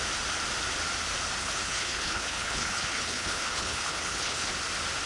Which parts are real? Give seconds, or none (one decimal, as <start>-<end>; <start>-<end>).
0.0-1.4; 4.5-5.1